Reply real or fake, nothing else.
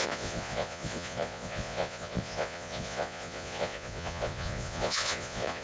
fake